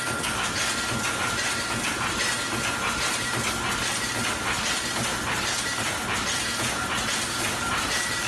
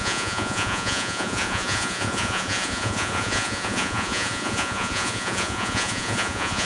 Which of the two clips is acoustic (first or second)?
first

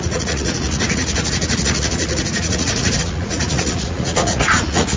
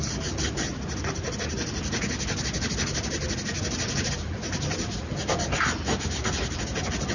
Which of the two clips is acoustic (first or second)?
second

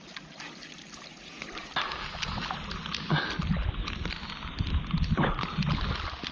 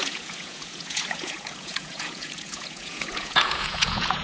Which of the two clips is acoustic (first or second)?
first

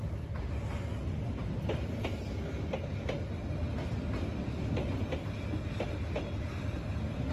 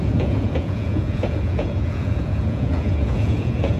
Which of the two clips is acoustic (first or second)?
first